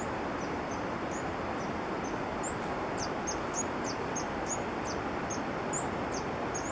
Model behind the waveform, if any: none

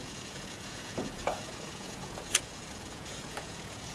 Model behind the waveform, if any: vocoder, Vocos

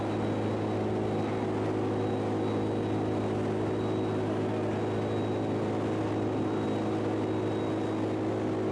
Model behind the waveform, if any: none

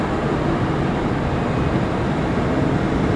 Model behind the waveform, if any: none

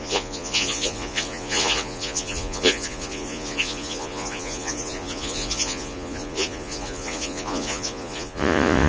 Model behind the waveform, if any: vocoder, Vocos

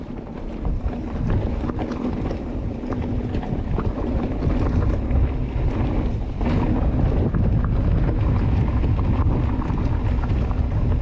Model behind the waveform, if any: none